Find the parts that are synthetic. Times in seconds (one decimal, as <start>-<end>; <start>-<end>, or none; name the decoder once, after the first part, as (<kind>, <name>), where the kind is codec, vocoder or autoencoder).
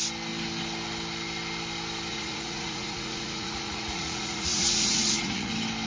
2.1-5.5 (vocoder, Vocos)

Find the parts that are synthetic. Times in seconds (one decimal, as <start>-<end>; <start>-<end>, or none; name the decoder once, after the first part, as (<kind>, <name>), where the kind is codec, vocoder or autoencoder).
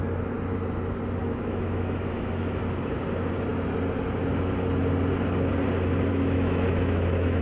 1.2-2.6 (autoencoder, DAC-VAE); 6.1-7.4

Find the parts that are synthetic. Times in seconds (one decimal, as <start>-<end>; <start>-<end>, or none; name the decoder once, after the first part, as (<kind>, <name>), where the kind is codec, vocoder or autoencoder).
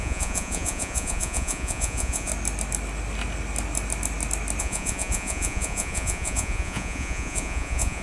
0.0-2.3 (vocoder, Vocos); 4.6-8.0